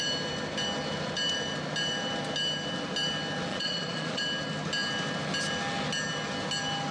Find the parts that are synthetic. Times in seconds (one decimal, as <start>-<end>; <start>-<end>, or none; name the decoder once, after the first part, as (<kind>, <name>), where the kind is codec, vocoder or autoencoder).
3.5-4.2 (vocoder, Vocos)